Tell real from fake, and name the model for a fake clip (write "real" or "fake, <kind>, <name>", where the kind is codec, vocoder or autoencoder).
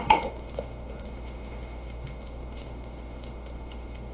fake, autoencoder, DAC-VAE